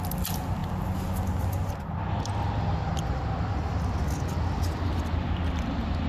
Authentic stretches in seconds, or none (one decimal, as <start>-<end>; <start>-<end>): 0.0-6.1